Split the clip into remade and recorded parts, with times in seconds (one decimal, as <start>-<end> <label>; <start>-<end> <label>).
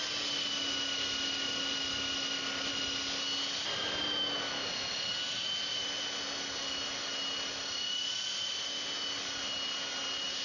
0.0-10.4 recorded